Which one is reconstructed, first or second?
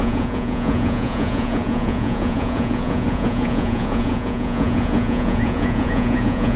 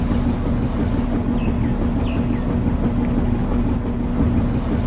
first